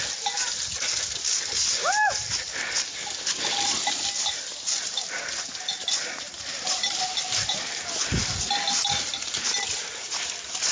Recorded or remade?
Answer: recorded